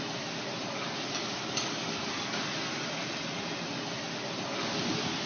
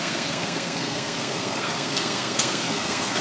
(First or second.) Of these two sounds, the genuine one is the first